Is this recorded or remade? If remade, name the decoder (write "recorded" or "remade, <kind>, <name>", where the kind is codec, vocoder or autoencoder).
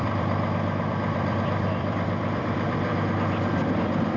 remade, vocoder, BigVGAN v2